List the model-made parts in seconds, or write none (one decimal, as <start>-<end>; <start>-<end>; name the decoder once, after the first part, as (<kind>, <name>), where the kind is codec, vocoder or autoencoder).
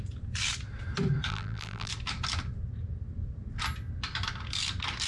1.3-1.9 (vocoder, BigVGAN v2)